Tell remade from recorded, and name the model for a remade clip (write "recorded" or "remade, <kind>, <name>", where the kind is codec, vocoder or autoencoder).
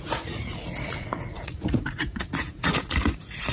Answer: remade, vocoder, Vocos